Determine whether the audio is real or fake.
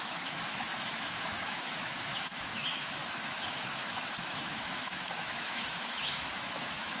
fake